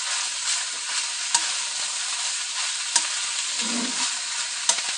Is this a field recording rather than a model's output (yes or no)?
yes